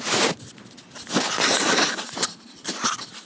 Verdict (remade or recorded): recorded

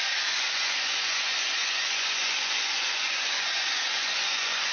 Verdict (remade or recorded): remade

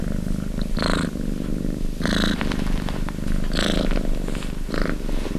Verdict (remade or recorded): recorded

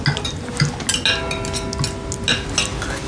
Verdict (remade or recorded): recorded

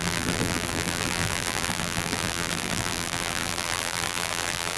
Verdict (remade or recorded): remade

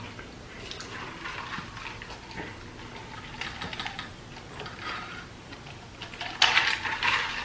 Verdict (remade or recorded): recorded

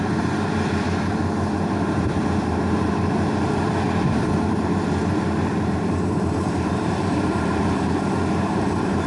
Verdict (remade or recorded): remade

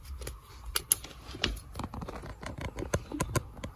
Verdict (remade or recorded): recorded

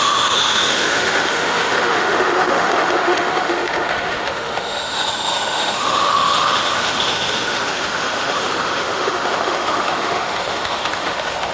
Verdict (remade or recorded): remade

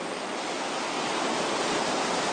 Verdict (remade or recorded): recorded